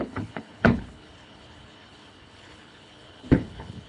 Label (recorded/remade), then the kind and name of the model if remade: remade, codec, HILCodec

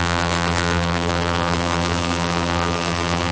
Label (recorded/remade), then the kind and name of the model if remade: remade, vocoder, BigVGAN v2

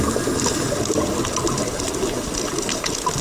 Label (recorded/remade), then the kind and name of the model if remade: recorded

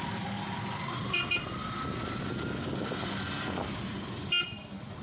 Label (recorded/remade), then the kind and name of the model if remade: recorded